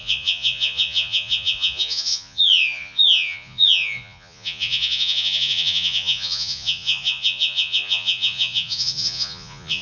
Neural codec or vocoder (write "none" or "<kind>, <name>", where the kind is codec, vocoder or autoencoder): vocoder, Vocos